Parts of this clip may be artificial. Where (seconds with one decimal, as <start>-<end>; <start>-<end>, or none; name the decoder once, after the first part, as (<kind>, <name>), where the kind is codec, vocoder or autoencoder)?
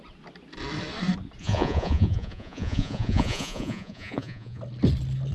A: 1.4-4.6 (vocoder, Vocos)